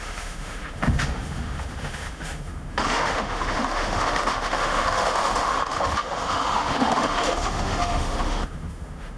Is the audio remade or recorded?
remade